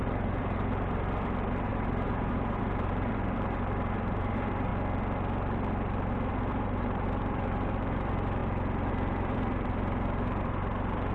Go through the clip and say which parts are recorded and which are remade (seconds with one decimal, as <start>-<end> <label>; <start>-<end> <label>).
0.0-4.7 remade; 4.7-6.3 recorded; 6.3-8.4 remade; 8.4-8.9 recorded; 8.9-11.1 remade